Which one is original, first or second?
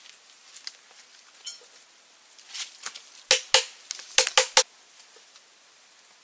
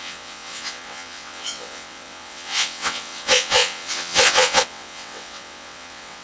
first